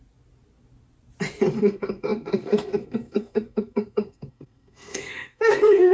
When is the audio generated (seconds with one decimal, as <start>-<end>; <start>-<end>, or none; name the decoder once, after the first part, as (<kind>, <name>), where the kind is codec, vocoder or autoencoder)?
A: 1.6-5.9 (codec, SNAC)